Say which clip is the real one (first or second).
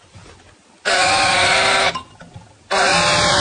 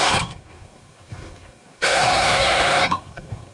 first